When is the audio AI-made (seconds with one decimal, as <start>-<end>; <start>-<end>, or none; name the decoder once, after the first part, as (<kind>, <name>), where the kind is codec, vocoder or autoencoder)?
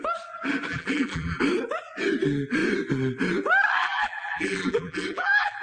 0.7-1.4 (vocoder, BigVGAN v2); 3.8-5.6